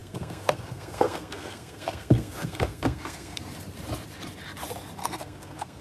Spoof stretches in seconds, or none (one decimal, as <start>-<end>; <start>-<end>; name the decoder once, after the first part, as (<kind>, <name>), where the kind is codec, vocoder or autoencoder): 0.0-3.4 (codec, SNAC); 5.0-5.8